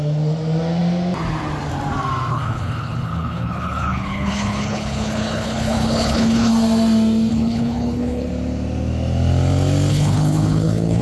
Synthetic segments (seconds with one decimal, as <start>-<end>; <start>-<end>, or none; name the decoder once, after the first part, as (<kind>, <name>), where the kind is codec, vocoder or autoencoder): 2.3-6.5 (codec, HILCodec); 7.3-8.3; 9.9-11.0